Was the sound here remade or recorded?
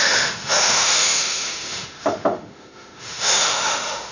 remade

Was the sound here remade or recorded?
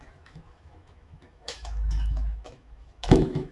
remade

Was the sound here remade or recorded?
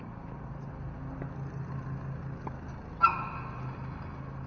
recorded